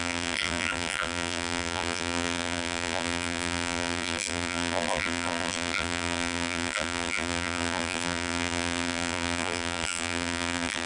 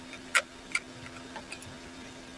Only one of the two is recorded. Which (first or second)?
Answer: second